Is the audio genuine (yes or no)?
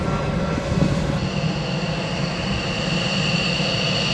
yes